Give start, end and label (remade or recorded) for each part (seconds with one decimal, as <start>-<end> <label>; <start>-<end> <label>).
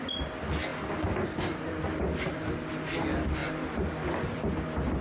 0.0-5.0 recorded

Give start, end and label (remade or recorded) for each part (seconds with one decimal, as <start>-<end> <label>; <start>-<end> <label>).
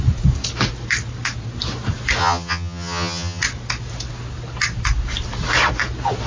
0.0-2.2 recorded; 2.2-3.4 remade; 3.4-6.3 recorded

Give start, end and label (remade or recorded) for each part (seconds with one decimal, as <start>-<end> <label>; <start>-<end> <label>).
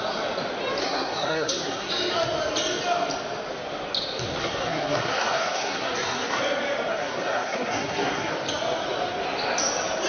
0.0-0.8 recorded; 0.8-1.9 remade; 1.9-4.4 recorded; 4.4-6.4 remade; 6.4-6.9 recorded; 6.9-8.3 remade; 8.3-10.1 recorded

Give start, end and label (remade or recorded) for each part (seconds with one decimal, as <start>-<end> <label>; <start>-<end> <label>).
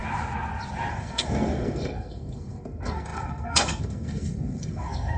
0.0-0.9 recorded; 0.9-5.2 remade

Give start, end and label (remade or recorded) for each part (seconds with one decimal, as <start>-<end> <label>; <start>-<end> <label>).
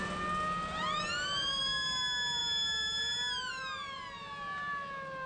0.0-0.8 recorded; 0.8-1.6 remade; 1.6-5.3 recorded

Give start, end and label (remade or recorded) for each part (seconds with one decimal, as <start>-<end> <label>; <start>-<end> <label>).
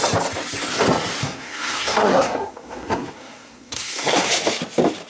0.0-1.2 recorded; 1.2-4.3 remade; 4.3-5.1 recorded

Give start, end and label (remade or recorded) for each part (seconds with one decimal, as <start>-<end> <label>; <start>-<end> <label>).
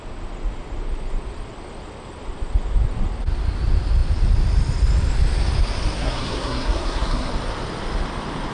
0.0-6.0 recorded; 6.0-7.3 remade; 7.3-8.5 recorded